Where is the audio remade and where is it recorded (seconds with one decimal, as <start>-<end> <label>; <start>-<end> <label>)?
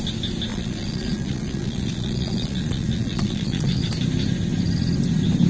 0.0-0.5 recorded; 0.5-3.8 remade; 3.8-5.5 recorded